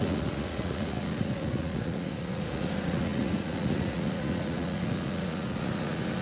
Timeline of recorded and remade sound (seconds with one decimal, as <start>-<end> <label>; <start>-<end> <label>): 0.0-6.2 remade